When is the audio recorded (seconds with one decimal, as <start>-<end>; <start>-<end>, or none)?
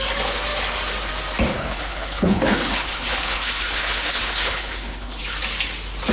0.0-1.5; 5.2-6.1